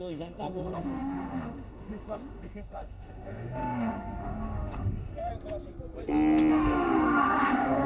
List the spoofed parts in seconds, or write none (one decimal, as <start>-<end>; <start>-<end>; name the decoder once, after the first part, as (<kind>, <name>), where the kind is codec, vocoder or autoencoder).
0.0-5.3 (autoencoder, DAC-VAE); 6.5-7.9